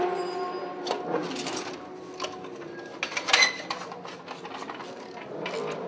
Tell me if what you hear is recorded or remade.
recorded